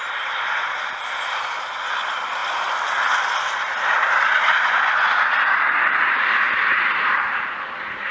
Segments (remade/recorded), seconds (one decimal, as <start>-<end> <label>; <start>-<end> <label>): 0.0-8.1 recorded